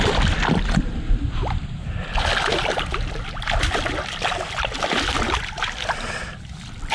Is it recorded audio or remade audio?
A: recorded